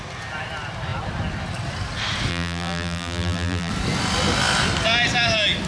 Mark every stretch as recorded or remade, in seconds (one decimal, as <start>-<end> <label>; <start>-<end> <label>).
0.0-2.3 recorded; 2.3-3.7 remade; 3.7-5.7 recorded